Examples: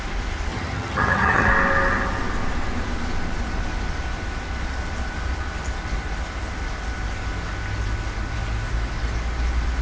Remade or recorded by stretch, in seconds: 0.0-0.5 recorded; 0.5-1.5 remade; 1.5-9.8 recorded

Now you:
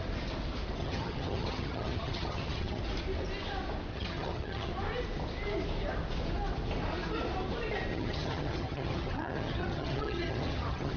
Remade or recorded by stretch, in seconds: 0.0-0.8 recorded; 0.8-2.8 remade; 2.8-3.9 recorded; 3.9-4.7 remade; 4.7-7.9 recorded; 7.9-11.0 remade

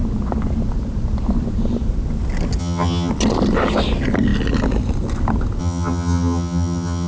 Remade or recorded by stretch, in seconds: 0.0-2.6 recorded; 2.6-3.1 remade; 3.1-5.6 recorded; 5.6-7.1 remade

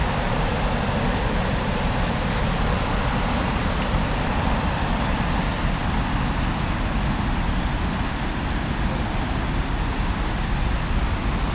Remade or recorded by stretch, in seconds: 0.0-11.5 recorded

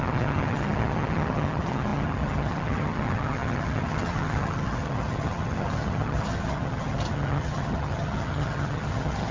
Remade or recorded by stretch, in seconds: 0.0-9.3 remade

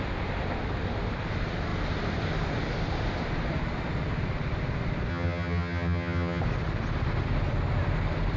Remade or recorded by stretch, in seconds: 0.0-5.1 recorded; 5.1-6.4 remade; 6.4-8.4 recorded